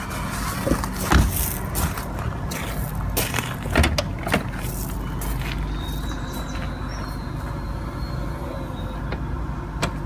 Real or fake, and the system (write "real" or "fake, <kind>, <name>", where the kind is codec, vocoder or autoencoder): real